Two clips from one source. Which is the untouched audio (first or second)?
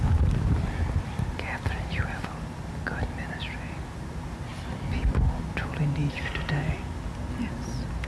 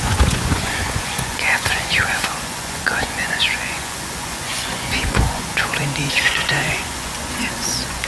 first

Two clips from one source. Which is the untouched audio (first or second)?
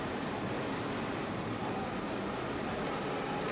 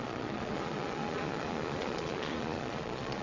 first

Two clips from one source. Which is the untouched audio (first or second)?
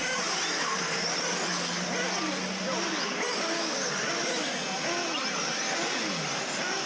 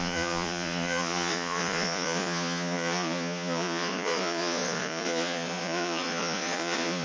first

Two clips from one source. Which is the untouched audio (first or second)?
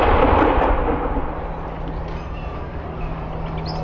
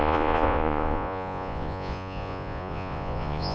first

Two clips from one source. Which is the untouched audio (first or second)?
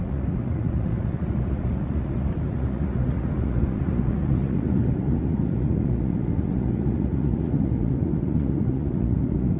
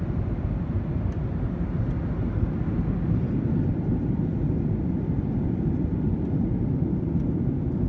second